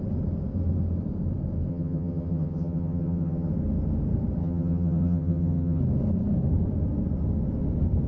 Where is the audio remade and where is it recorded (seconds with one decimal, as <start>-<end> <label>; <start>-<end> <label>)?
0.0-1.7 recorded; 1.7-3.5 remade; 3.5-4.4 recorded; 4.4-5.8 remade; 5.8-8.1 recorded